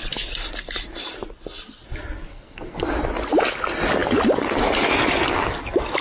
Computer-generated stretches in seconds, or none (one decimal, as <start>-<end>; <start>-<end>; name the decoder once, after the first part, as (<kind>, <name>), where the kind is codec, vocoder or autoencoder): 2.3-2.9 (codec, SNAC)